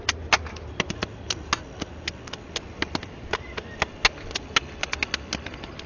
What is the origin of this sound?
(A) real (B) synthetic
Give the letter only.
A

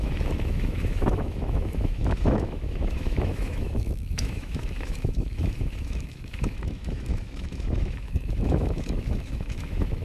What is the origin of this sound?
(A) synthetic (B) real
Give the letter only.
A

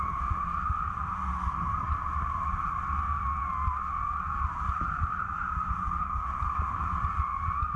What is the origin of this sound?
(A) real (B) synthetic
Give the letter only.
A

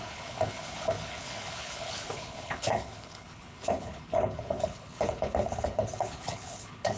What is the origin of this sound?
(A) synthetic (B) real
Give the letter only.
A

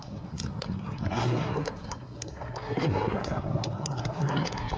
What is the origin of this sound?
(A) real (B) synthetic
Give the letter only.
B